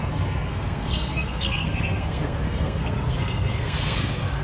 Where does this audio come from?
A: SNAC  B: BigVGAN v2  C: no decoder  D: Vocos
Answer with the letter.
A